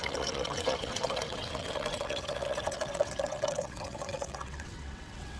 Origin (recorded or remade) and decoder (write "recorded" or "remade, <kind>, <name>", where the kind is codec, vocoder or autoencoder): remade, vocoder, WaveNeXt